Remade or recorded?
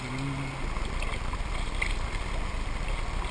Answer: recorded